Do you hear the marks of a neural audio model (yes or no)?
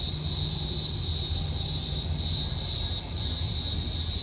no